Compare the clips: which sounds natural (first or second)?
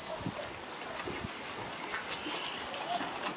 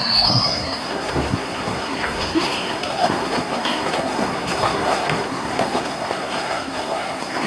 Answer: first